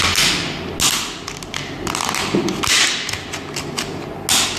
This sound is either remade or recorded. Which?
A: recorded